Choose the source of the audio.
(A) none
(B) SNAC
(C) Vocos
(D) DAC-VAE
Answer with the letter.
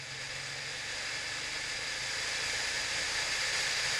A